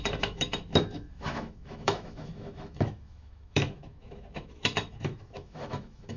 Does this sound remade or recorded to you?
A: remade